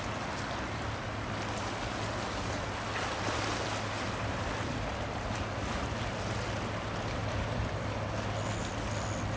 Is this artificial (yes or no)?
no